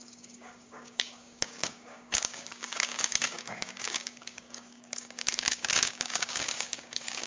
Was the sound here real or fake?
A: fake